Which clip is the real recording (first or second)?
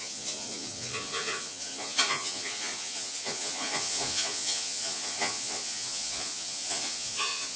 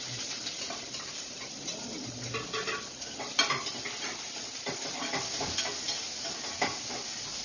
second